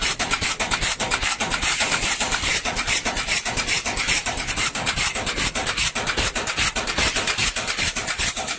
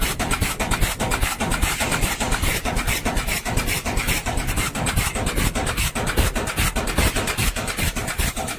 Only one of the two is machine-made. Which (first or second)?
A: first